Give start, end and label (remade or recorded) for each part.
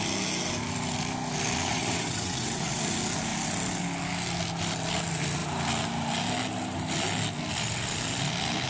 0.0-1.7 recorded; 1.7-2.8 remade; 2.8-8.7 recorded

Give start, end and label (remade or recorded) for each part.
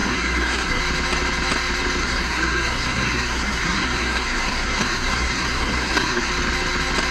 0.0-0.8 remade; 0.8-2.0 recorded; 2.0-6.3 remade; 6.3-7.1 recorded